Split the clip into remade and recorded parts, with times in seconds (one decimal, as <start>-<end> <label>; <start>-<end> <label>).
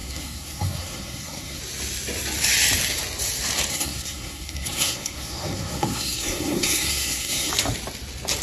0.0-1.6 remade; 1.6-3.7 recorded; 3.7-7.5 remade; 7.5-8.4 recorded